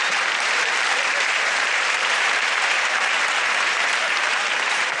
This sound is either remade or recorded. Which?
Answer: remade